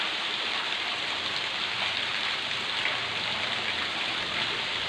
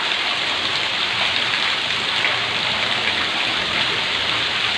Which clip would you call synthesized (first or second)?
second